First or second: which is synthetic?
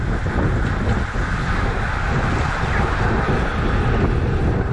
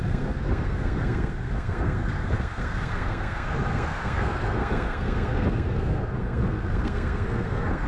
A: second